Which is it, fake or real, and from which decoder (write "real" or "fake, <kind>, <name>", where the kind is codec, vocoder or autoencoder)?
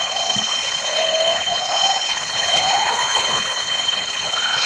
fake, codec, HILCodec